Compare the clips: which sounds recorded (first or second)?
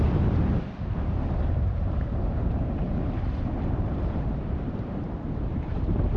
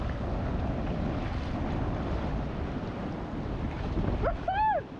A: second